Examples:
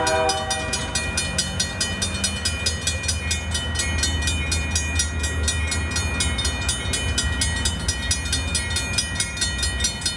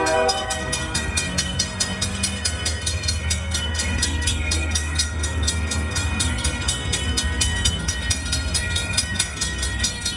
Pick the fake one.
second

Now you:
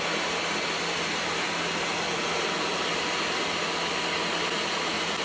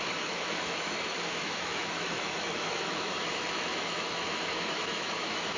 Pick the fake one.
second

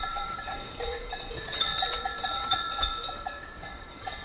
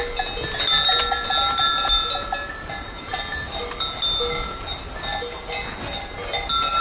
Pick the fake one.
first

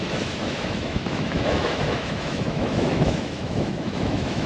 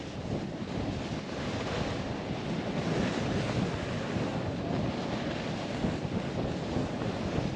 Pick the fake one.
first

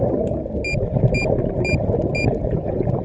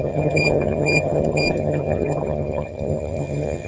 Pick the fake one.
second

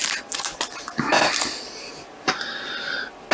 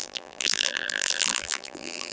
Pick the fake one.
second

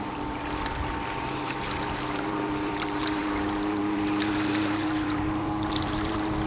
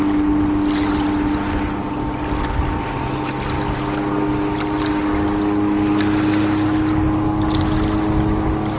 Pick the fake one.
first